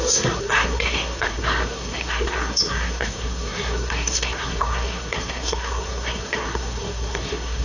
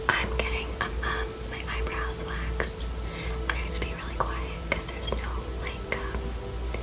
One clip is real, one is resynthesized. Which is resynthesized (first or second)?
first